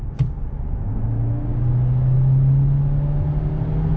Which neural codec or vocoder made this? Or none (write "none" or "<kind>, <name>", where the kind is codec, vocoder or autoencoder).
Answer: none